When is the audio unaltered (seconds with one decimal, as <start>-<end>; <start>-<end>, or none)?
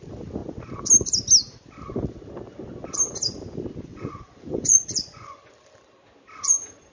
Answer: 0.0-3.9; 5.4-6.9